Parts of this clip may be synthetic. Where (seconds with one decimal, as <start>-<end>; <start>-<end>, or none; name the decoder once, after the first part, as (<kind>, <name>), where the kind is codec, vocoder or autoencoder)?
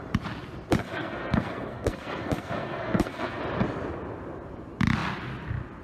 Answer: 0.8-3.4 (codec, SNAC)